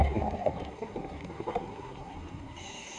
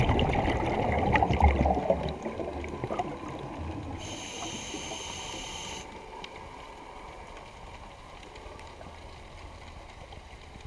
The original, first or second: second